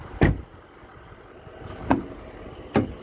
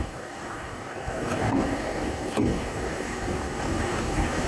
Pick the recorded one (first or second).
first